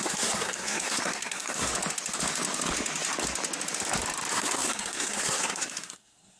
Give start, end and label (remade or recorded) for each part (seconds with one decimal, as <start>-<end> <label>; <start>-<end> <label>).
0.0-1.7 remade; 1.7-4.3 recorded; 4.3-6.4 remade